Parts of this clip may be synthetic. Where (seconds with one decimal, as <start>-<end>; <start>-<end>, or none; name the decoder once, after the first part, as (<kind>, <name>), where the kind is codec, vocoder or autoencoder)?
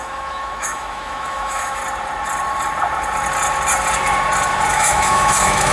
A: 0.0-1.8 (autoencoder, DAC-VAE); 4.7-5.7